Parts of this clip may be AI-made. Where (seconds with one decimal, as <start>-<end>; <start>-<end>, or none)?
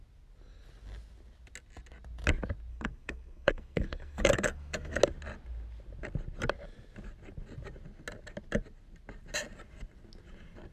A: 2.7-5.0